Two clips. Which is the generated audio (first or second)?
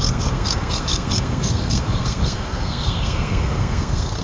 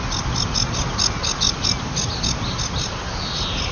first